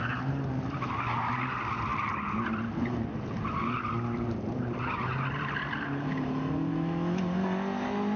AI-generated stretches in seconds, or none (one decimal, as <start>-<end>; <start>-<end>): 6.7-7.2